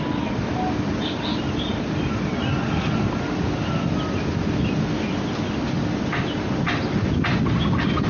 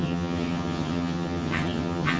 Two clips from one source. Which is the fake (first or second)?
second